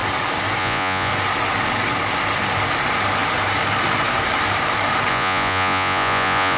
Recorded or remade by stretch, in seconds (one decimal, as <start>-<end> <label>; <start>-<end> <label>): 0.0-0.6 recorded; 0.6-1.1 remade; 1.1-5.1 recorded; 5.1-6.6 remade

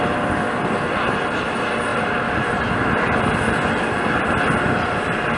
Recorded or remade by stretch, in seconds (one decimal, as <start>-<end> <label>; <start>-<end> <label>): 0.0-5.4 recorded

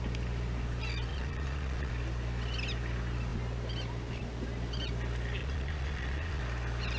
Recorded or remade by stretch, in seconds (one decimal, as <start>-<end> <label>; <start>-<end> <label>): 0.0-1.1 recorded; 1.1-1.9 remade; 1.9-5.4 recorded; 5.4-6.4 remade; 6.4-7.0 recorded

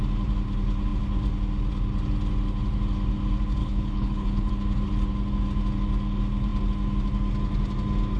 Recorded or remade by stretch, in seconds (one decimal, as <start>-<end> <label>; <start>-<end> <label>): 0.0-3.6 recorded; 3.6-4.5 remade; 4.5-8.2 recorded

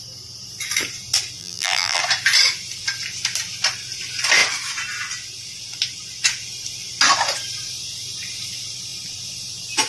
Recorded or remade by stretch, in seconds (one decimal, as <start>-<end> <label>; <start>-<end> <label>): 0.0-1.4 recorded; 1.4-2.0 remade; 2.0-9.9 recorded

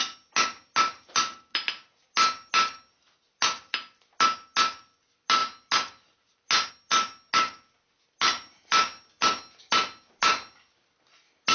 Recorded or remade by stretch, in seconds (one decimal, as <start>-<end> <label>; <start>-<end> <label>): 0.0-11.5 recorded

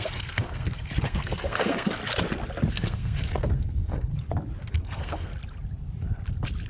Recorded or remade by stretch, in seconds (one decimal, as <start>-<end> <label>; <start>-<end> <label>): 0.0-2.0 remade; 2.0-2.7 recorded; 2.7-4.1 remade; 4.1-4.7 recorded; 4.7-5.3 remade; 5.3-6.7 recorded